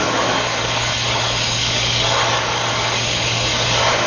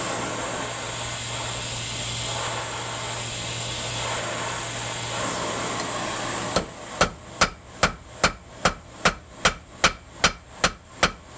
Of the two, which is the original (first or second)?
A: second